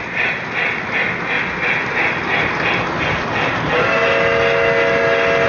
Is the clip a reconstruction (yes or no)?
no